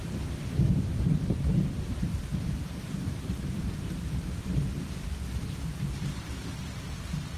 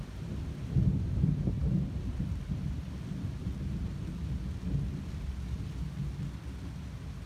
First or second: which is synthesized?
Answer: first